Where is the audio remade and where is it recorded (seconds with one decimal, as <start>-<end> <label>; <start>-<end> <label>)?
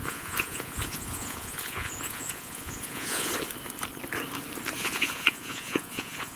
0.0-3.3 remade; 3.3-4.8 recorded; 4.8-6.4 remade